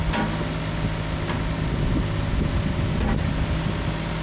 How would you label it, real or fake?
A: real